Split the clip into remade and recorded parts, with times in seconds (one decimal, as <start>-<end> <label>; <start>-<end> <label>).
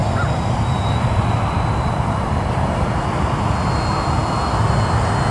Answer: 0.0-2.8 remade; 2.8-5.3 recorded